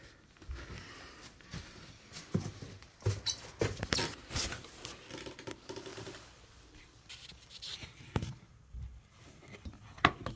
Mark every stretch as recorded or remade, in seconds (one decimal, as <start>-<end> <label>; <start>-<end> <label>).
0.0-5.9 recorded; 5.9-7.1 remade; 7.1-10.4 recorded

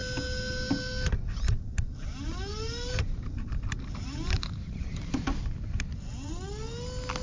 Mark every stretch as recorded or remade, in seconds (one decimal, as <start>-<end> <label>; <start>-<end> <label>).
0.0-2.5 recorded; 2.5-5.5 remade; 5.5-7.2 recorded

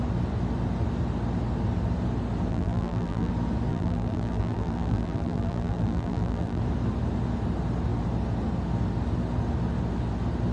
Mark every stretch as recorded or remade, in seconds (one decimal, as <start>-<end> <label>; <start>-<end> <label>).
0.0-2.5 recorded; 2.5-3.3 remade; 3.3-3.7 recorded; 3.7-6.6 remade; 6.6-10.5 recorded

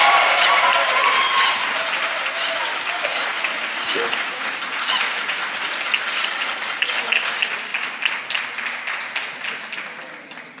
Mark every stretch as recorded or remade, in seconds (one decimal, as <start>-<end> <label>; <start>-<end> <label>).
0.0-1.2 remade; 1.2-10.6 recorded